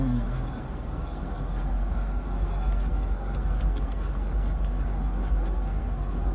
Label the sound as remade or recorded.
remade